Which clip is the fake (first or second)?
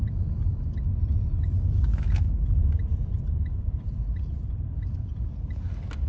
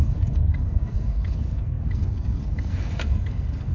second